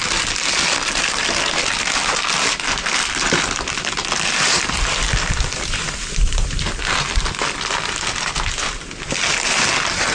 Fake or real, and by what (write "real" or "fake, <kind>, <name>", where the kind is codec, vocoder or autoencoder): real